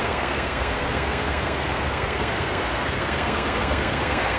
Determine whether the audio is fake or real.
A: fake